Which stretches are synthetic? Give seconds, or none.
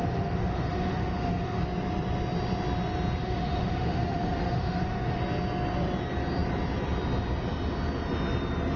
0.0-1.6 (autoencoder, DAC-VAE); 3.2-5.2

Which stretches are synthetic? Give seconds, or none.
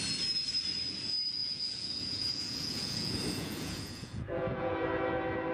1.4-4.7 (vocoder, Vocos)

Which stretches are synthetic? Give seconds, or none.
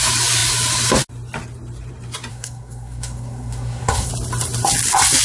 2.3-4.1 (codec, SNAC)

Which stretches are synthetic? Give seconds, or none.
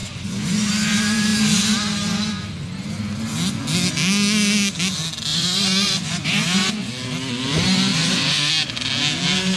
0.0-0.7 (vocoder, Vocos); 5.3-6.9; 7.9-8.5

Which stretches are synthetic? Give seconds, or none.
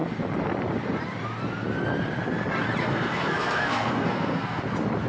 2.8-4.6 (codec, SNAC)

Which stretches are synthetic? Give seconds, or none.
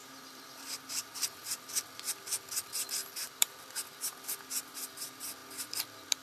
0.0-1.7 (vocoder, BigVGAN v2); 3.2-4.1